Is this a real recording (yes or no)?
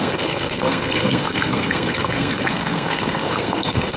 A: no